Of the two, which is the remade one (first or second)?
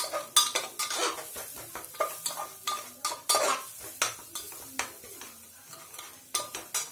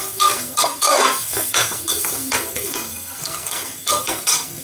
second